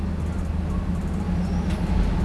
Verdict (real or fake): real